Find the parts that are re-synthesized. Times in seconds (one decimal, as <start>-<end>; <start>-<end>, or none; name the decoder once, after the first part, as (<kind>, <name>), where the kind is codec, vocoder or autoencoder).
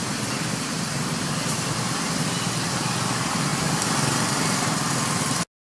none